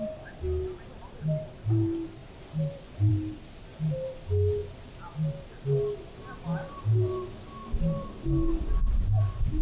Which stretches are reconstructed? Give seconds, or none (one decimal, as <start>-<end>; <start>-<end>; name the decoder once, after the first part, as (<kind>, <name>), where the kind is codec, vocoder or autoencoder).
none